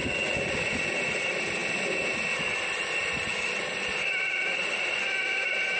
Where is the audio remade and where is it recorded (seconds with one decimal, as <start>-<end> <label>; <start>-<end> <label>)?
0.0-1.0 recorded; 1.0-1.6 remade; 1.6-2.6 recorded; 2.6-5.8 remade